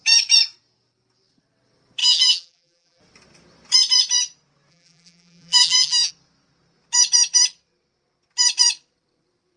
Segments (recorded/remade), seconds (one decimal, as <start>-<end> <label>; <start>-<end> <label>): 0.0-2.0 recorded; 2.0-3.0 remade; 3.0-4.7 recorded; 4.7-6.1 remade; 6.1-9.6 recorded

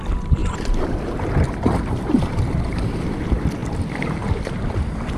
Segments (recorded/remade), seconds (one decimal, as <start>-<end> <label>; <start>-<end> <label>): 0.0-0.4 recorded; 0.4-3.0 remade; 3.0-3.6 recorded; 3.6-4.6 remade; 4.6-5.2 recorded